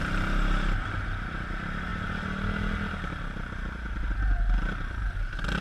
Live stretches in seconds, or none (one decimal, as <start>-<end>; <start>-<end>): 0.0-5.6